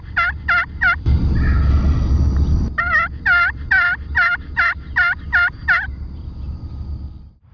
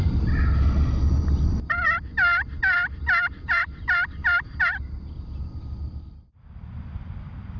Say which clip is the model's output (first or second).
second